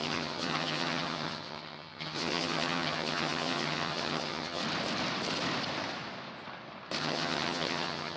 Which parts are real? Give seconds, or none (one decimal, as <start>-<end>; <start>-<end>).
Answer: 4.6-7.0